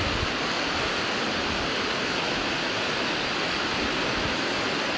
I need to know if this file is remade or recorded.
recorded